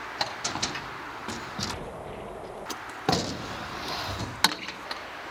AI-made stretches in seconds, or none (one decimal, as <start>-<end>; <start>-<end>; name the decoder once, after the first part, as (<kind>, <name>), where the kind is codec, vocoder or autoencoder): 1.2-4.2 (vocoder, BigVGAN v2)

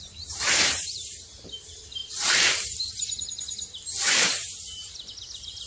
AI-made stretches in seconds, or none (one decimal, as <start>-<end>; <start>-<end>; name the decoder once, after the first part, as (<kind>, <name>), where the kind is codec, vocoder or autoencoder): 0.0-5.7 (vocoder, BigVGAN v2)

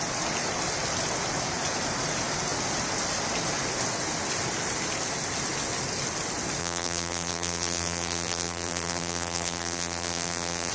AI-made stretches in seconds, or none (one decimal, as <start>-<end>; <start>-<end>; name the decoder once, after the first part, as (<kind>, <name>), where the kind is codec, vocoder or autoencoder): 6.6-10.7 (vocoder, BigVGAN v2)

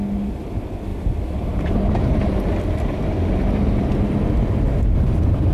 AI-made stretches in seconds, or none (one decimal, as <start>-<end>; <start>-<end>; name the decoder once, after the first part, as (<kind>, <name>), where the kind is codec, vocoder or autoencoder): 0.9-1.7 (vocoder, BigVGAN v2)

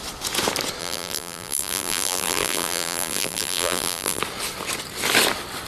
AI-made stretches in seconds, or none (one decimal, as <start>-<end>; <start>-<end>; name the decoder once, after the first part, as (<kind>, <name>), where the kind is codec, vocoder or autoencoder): 0.8-4.2 (vocoder, BigVGAN v2)

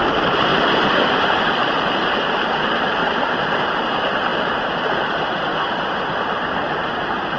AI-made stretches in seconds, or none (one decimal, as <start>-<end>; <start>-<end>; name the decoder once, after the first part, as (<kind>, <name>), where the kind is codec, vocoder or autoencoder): 0.0-3.0 (vocoder, BigVGAN v2); 3.7-5.5; 6.5-7.4

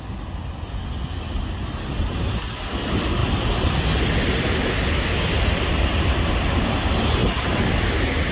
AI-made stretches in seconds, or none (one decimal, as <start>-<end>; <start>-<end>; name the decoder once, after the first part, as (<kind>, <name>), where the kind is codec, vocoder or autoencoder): 3.2-6.1 (vocoder, BigVGAN v2); 7.2-8.3

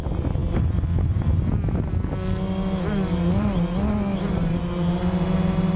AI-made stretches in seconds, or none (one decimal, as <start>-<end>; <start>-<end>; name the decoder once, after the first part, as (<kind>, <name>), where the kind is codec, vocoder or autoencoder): 4.1-5.8 (vocoder, BigVGAN v2)